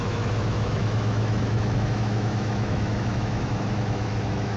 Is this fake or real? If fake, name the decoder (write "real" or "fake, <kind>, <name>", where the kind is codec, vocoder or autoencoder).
fake, autoencoder, DAC-VAE